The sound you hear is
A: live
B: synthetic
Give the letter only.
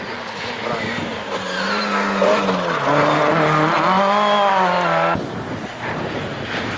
A